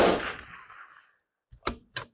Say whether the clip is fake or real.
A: fake